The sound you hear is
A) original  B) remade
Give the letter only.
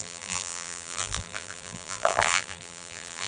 B